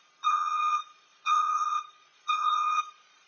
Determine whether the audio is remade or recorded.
remade